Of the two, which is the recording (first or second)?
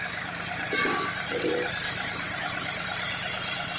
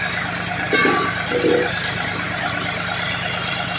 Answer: second